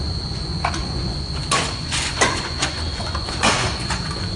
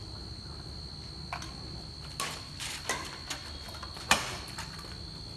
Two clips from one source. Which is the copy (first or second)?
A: first